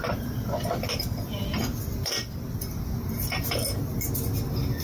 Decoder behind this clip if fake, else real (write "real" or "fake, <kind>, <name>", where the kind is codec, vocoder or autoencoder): real